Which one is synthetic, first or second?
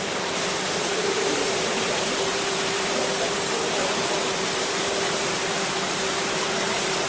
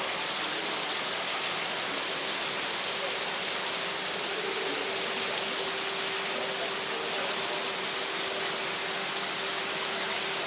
first